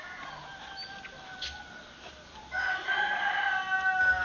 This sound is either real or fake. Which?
real